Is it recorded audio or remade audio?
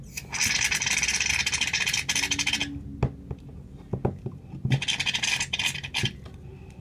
recorded